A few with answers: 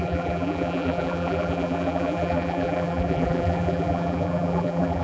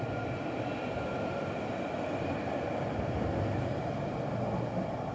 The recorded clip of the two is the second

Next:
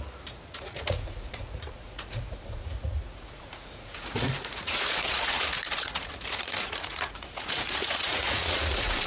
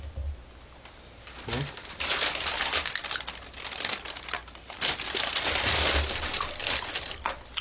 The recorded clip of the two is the second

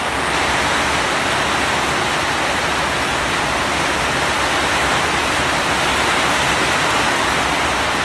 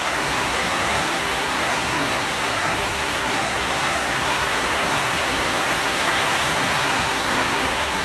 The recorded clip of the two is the first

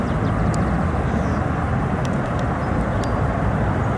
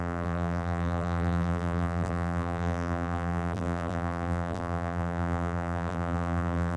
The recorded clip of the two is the first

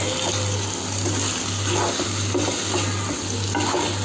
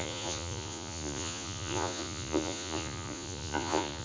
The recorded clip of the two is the first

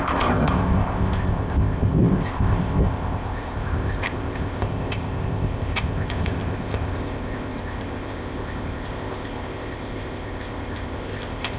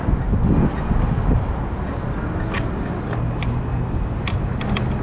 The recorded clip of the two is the second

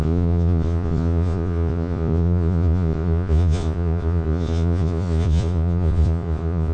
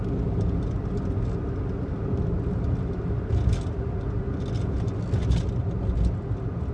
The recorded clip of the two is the second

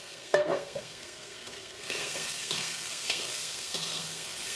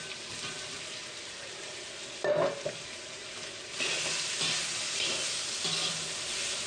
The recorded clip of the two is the second